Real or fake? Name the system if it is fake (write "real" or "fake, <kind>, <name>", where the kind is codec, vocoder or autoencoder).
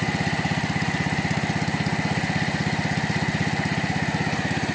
real